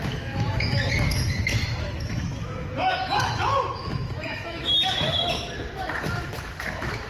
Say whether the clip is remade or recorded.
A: remade